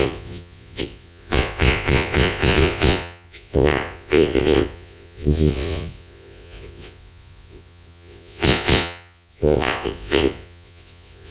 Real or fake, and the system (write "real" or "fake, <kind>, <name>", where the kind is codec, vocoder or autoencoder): fake, vocoder, Vocos